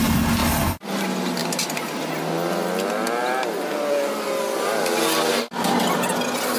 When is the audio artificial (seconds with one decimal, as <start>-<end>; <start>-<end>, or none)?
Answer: none